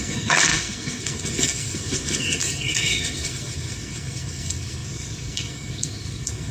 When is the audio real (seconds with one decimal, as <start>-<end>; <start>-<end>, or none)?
none